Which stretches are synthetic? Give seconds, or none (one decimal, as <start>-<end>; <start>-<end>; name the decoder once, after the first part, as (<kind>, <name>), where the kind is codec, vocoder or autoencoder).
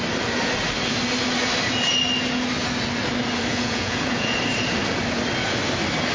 3.5-4.4 (vocoder, Vocos)